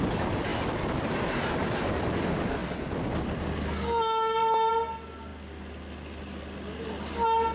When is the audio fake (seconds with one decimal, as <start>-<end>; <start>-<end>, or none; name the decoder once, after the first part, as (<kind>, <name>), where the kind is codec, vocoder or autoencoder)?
none